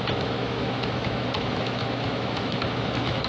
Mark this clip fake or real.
fake